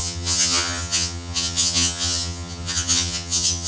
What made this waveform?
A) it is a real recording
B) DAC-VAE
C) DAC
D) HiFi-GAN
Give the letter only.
D